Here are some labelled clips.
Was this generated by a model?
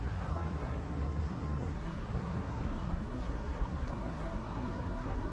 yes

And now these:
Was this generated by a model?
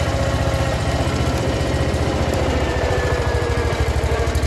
yes